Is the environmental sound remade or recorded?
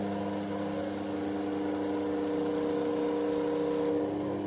recorded